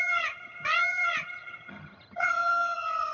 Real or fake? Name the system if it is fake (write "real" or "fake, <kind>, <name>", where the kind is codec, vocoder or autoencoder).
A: fake, vocoder, HiFi-GAN